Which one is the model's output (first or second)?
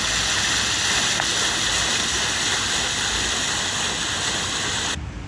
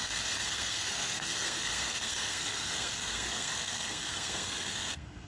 second